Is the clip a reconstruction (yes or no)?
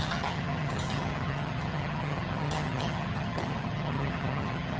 yes